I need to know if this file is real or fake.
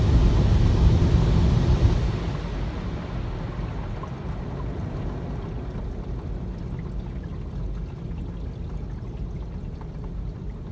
real